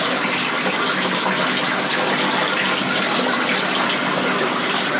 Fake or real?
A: real